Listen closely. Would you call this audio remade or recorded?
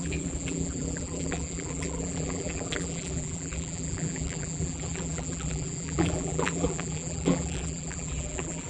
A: remade